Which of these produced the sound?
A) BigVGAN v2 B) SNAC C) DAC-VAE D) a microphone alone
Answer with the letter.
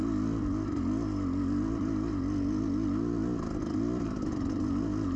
D